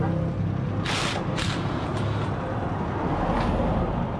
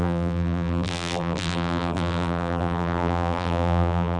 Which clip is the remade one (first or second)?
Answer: second